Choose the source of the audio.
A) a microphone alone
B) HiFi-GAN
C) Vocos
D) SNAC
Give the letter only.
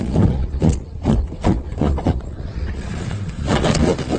C